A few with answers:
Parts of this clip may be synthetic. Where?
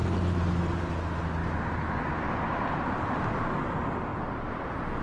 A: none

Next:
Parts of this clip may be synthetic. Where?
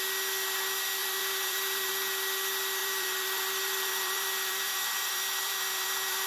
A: 1.0-1.9 (vocoder, BigVGAN v2); 2.8-6.3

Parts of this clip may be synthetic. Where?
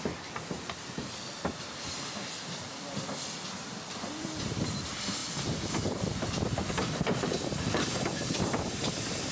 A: 0.0-9.3 (vocoder, BigVGAN v2)